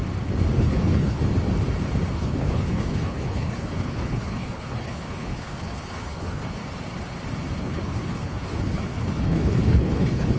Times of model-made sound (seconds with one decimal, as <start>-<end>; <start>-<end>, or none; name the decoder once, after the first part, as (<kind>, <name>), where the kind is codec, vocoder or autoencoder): 0.6-1.3 (codec, HILCodec); 2.1-6.6; 7.6-10.4